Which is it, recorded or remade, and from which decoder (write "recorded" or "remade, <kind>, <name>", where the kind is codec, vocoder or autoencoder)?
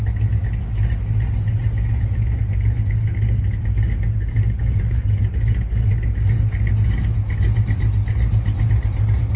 recorded